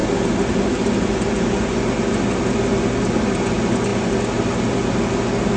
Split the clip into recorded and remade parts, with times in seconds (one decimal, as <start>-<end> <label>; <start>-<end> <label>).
0.0-5.6 recorded